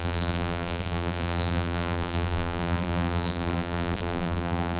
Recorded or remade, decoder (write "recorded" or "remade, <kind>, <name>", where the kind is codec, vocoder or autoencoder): remade, vocoder, BigVGAN v2